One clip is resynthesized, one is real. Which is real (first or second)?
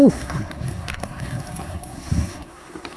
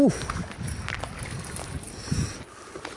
second